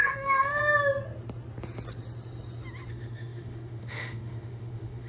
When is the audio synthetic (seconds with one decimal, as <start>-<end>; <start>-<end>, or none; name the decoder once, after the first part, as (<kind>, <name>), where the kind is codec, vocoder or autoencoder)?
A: 0.0-0.6 (autoencoder, DAC-VAE); 2.9-5.1